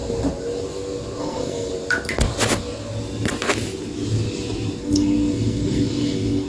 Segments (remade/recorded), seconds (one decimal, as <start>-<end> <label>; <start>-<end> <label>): 0.0-1.2 recorded; 1.2-1.7 remade; 1.7-4.8 recorded; 4.8-6.5 remade